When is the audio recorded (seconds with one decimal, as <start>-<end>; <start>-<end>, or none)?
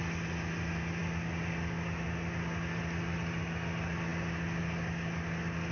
0.0-5.7